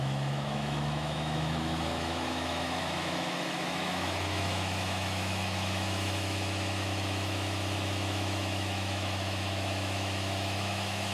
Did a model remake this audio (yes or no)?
yes